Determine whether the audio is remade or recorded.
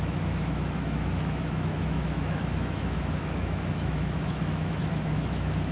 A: remade